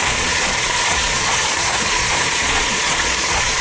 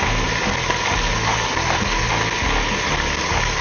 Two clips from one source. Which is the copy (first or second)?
first